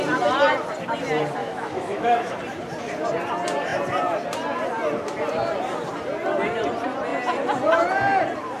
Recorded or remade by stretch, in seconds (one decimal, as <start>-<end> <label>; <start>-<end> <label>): 0.0-1.4 recorded; 1.4-2.4 remade; 2.4-8.6 recorded